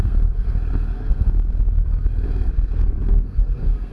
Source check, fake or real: fake